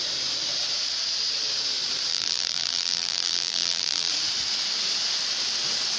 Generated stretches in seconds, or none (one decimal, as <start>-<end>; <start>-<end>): 2.1-4.1